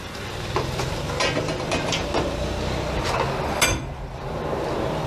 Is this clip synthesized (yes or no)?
no